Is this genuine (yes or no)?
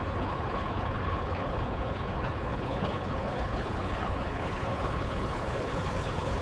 no